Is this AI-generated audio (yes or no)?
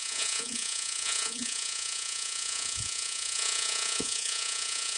yes